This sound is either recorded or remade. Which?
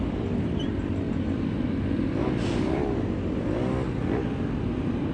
recorded